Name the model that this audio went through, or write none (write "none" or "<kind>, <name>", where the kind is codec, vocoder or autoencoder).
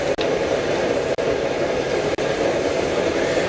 vocoder, BigVGAN v2